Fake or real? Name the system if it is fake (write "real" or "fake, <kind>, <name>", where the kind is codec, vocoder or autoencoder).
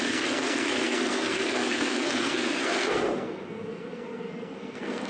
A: fake, codec, SNAC